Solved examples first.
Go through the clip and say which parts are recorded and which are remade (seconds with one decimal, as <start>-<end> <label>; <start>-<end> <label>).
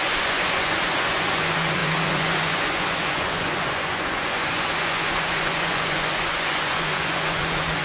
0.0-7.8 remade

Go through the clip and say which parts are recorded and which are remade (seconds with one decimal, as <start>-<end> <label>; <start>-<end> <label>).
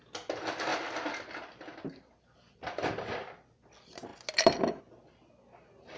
0.0-6.0 recorded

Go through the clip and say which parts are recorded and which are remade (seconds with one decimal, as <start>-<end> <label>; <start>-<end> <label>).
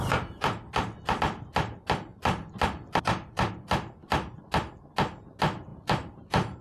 0.0-2.1 recorded; 2.1-3.5 remade; 3.5-4.0 recorded; 4.0-4.5 remade; 4.5-5.7 recorded; 5.7-6.6 remade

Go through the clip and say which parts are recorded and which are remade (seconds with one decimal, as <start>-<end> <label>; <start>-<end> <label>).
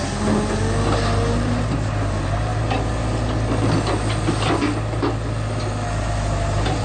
0.0-6.8 recorded